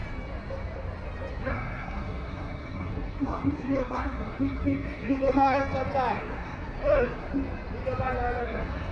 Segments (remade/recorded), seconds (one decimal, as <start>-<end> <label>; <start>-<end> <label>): 0.0-1.3 recorded; 1.3-5.6 remade; 5.6-6.1 recorded; 6.1-7.3 remade; 7.3-8.4 recorded; 8.4-8.9 remade